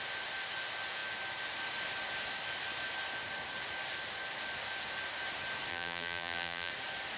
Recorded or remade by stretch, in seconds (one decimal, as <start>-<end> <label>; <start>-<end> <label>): 0.0-5.7 recorded; 5.7-6.7 remade; 6.7-7.2 recorded